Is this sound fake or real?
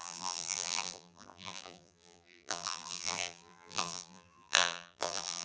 fake